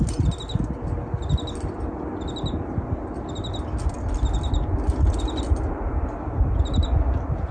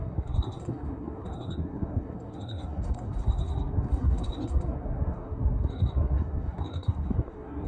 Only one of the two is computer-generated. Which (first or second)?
second